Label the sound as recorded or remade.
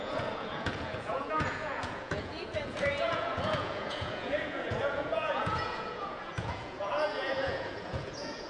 remade